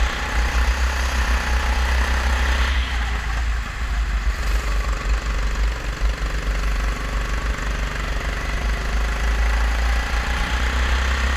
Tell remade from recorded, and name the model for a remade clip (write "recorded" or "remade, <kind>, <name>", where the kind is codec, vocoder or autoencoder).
recorded